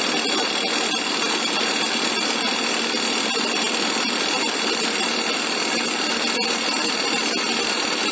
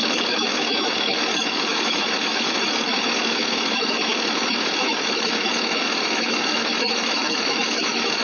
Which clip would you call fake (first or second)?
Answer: second